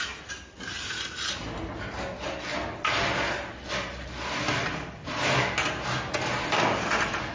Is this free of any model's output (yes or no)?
yes